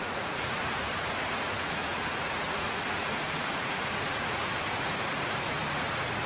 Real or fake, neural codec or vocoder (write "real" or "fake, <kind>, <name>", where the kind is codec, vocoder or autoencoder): fake, vocoder, Vocos